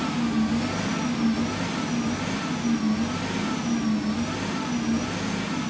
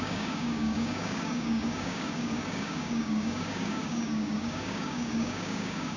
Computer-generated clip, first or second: second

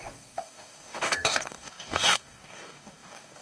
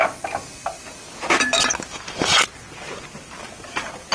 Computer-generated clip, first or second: first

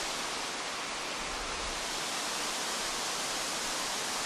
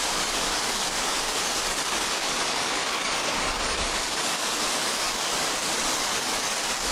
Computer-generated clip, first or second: second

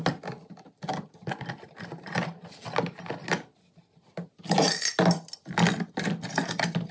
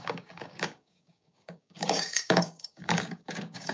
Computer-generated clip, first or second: second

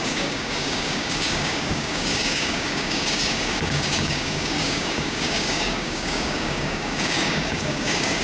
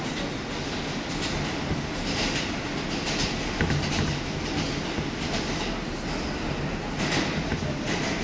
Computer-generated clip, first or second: first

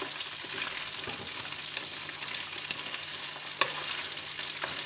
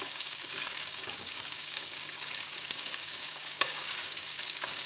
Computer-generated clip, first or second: second